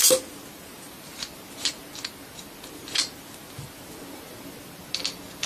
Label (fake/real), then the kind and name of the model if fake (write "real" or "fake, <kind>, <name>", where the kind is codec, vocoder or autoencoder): real